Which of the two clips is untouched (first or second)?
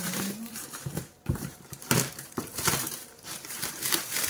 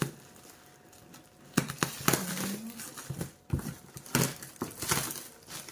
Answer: second